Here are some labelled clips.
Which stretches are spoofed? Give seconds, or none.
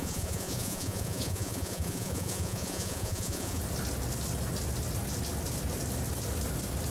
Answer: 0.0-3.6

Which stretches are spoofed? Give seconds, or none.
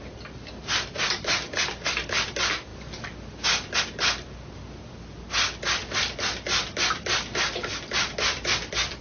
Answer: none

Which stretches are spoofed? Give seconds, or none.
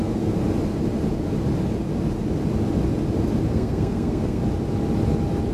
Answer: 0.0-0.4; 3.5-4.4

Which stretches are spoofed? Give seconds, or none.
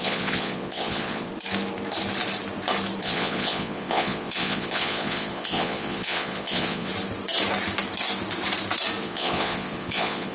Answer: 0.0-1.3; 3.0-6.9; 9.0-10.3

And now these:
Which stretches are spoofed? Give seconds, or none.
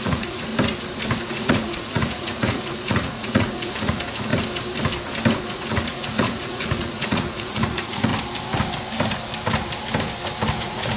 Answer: 0.0-0.5; 1.2-4.3; 5.5-8.1; 10.6-11.0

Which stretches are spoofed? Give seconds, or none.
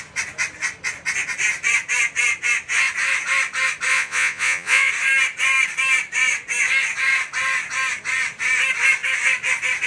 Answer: 3.9-4.9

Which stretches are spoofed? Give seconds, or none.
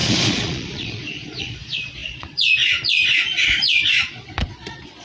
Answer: 0.0-5.0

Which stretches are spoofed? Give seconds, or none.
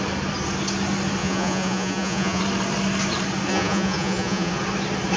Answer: 1.2-2.4; 3.5-4.5